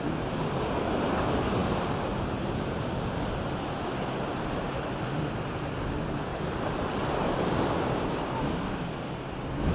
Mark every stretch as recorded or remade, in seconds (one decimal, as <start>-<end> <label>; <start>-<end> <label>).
0.0-1.6 recorded; 1.6-3.4 remade; 3.4-6.3 recorded; 6.3-9.0 remade; 9.0-9.7 recorded